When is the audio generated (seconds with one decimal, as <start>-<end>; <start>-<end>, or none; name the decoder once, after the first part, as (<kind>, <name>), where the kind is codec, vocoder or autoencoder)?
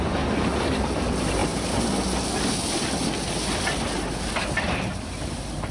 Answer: none